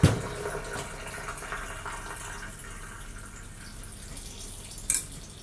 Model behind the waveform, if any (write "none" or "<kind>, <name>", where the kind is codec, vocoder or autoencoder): none